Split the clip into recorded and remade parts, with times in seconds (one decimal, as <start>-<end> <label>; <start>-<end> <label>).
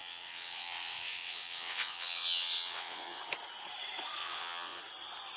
0.0-3.2 remade; 3.2-4.2 recorded; 4.2-4.8 remade; 4.8-5.4 recorded